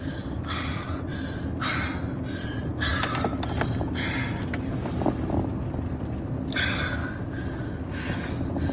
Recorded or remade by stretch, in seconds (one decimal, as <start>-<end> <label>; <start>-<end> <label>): 0.0-8.7 recorded